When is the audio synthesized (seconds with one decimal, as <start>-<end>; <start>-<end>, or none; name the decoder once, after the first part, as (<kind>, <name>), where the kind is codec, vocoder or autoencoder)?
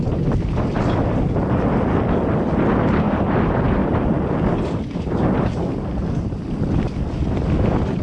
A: 3.8-4.7 (vocoder, BigVGAN v2)